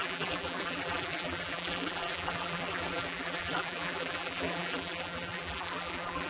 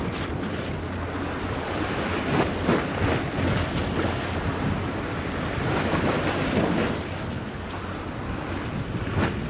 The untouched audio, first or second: second